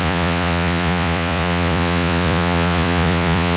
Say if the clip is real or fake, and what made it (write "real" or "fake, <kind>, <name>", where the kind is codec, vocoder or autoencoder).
fake, vocoder, Vocos